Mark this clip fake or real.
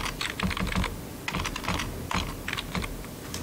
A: real